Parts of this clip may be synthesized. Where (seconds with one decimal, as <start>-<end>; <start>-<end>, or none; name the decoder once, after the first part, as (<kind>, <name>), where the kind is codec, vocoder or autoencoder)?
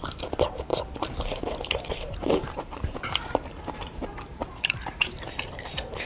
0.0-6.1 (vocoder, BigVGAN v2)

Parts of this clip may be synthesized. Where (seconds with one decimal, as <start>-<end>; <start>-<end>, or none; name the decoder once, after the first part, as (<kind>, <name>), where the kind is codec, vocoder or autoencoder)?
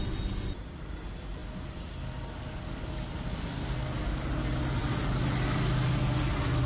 none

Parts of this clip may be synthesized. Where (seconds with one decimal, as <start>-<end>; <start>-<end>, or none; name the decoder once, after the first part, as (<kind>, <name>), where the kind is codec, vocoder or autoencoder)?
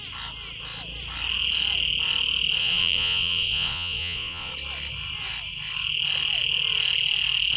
2.6-4.5 (vocoder, Vocos)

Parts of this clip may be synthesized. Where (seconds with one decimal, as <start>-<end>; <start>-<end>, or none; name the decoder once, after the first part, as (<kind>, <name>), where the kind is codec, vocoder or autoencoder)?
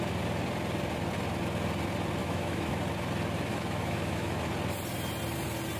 2.2-2.7 (autoencoder, DAC-VAE); 3.5-4.5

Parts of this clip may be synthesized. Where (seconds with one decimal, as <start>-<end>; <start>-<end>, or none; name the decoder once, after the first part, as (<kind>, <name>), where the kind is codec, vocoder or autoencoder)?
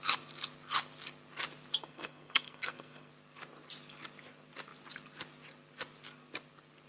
1.8-3.1 (codec, SNAC)